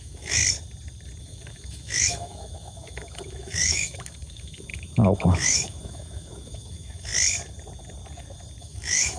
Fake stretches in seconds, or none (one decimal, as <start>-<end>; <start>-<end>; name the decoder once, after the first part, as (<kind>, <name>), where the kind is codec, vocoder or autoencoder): 0.0-0.4 (autoencoder, DAC-VAE); 1.2-7.1; 8.6-9.2